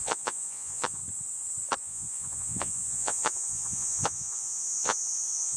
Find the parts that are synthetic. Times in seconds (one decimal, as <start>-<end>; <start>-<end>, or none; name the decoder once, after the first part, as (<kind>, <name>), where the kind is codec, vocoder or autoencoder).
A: 0.0-1.0 (vocoder, Vocos); 1.8-5.6